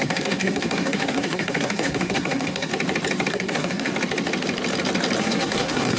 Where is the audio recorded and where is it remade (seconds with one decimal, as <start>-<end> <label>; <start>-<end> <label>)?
0.0-2.7 remade; 2.7-3.3 recorded; 3.3-3.9 remade; 3.9-5.2 recorded; 5.2-6.0 remade